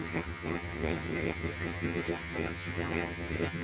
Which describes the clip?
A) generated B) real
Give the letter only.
A